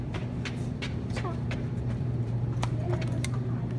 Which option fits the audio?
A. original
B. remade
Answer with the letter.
B